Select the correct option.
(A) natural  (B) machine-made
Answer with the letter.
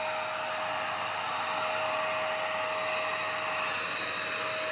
A